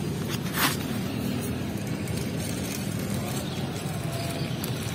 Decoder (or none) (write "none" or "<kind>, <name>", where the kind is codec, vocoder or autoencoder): vocoder, BigVGAN v2